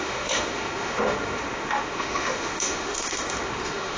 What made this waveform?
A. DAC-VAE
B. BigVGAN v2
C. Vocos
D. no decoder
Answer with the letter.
A